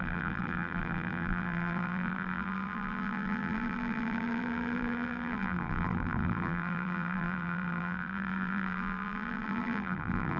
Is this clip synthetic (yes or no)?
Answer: yes